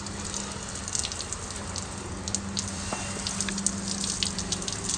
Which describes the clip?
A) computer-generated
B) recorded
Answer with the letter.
B